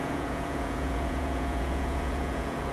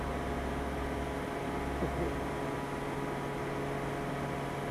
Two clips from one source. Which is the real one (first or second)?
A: second